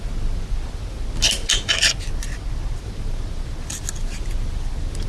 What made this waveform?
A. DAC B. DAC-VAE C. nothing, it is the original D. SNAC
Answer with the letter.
C